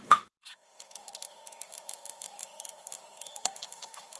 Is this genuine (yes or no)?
no